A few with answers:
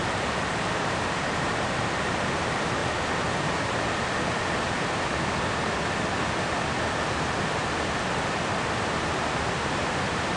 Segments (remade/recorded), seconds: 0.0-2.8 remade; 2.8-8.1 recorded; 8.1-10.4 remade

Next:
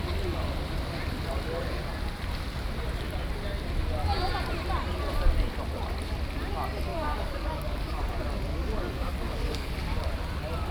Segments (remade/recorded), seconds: 0.0-6.9 recorded; 6.9-8.1 remade; 8.1-8.5 recorded; 8.5-9.7 remade; 9.7-10.7 recorded

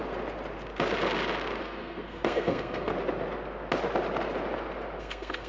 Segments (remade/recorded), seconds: 0.0-1.6 recorded; 1.6-2.9 remade; 2.9-5.0 recorded; 5.0-5.5 remade

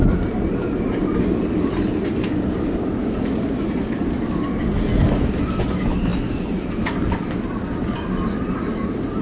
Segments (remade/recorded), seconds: 0.0-9.2 recorded

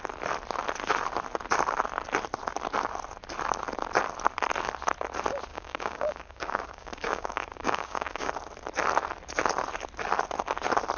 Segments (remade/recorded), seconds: 0.0-5.5 recorded; 5.5-8.3 remade; 8.3-11.0 recorded